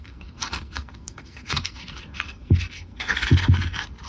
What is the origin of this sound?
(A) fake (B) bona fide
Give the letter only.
A